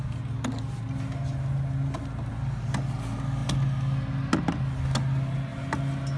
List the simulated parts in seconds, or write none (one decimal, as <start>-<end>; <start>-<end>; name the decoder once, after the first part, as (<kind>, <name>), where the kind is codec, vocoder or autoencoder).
none